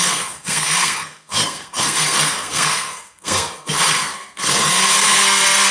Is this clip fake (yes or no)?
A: yes